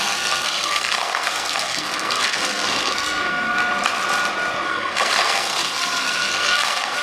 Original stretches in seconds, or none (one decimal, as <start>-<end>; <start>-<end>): 3.6-4.7